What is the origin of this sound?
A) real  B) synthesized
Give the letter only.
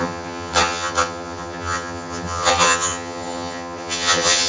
B